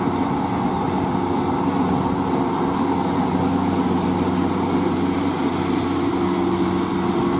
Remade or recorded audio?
recorded